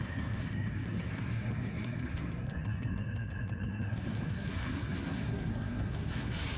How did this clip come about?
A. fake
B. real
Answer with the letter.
A